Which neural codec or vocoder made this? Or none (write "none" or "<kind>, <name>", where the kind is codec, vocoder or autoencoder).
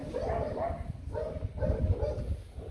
none